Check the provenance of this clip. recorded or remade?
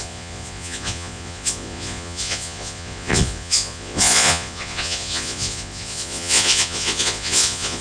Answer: remade